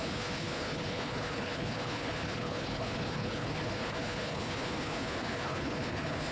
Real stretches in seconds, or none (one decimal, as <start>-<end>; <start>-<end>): none